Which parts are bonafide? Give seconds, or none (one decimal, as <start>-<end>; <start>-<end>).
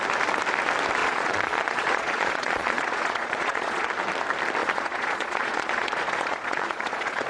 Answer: 0.0-1.0; 3.9-4.6